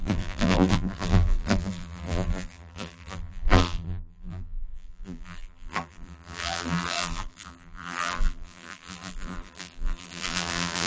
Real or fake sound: fake